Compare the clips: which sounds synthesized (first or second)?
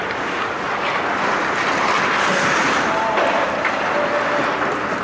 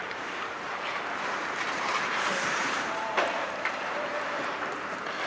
second